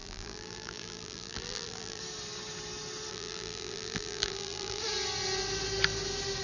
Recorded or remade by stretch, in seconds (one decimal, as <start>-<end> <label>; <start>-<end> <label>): 0.0-2.0 remade; 2.0-3.1 recorded; 3.1-4.8 remade; 4.8-6.4 recorded